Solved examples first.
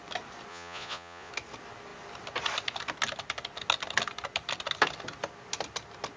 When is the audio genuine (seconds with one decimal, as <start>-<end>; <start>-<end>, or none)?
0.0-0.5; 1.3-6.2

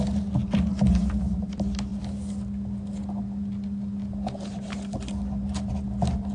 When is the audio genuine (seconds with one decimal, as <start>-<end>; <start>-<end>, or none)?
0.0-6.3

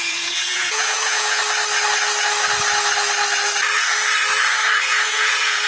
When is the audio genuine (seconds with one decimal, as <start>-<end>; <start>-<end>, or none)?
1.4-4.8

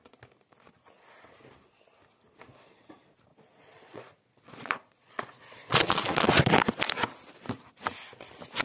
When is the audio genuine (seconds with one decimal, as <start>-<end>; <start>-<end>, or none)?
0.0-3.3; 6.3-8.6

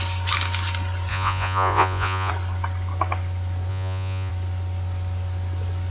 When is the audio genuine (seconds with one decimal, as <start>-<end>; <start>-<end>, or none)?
0.0-1.1; 2.3-3.7; 4.3-5.9

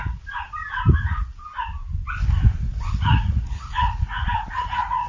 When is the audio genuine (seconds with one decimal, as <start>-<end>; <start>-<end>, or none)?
0.0-0.9; 1.4-2.9

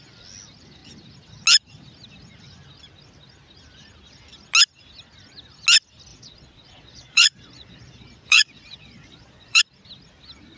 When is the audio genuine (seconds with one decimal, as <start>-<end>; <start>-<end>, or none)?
0.0-6.1; 9.6-10.6